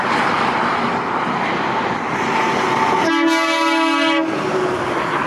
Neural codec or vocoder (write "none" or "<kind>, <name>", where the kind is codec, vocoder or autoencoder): none